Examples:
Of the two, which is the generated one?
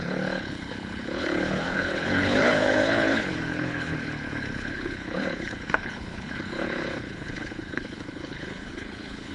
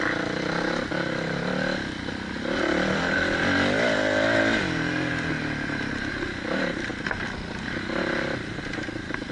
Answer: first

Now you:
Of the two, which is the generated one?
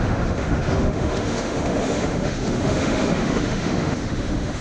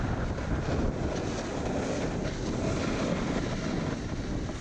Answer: first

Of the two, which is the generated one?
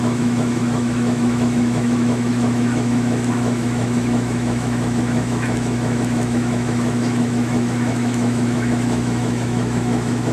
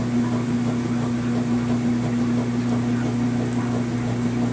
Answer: first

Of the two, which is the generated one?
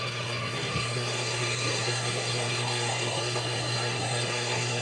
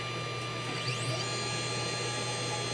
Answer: first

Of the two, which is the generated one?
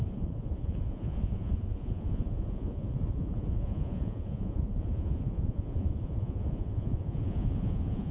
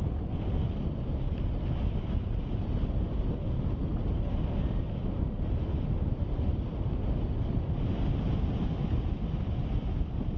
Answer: first